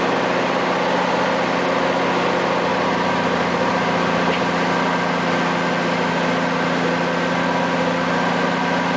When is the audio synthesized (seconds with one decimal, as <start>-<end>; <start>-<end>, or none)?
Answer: 2.7-4.4